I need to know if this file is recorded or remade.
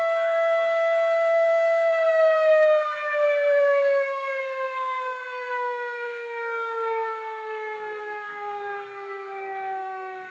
remade